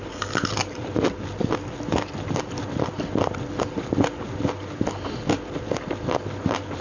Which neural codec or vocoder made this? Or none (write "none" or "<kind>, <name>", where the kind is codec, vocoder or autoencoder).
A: none